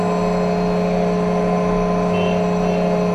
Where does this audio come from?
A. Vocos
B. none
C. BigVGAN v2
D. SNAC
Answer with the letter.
B